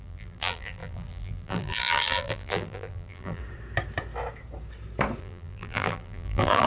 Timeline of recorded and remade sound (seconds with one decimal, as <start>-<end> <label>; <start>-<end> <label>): 0.0-3.4 remade; 3.4-5.2 recorded; 5.2-6.7 remade